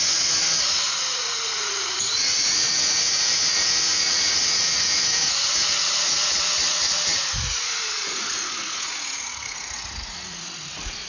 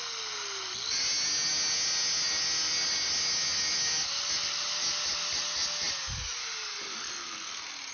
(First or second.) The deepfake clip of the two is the first